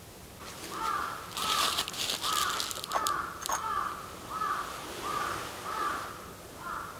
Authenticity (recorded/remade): recorded